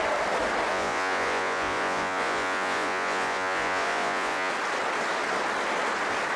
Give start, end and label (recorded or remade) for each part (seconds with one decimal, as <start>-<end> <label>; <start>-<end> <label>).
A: 0.0-0.7 recorded; 0.7-4.5 remade; 4.5-6.4 recorded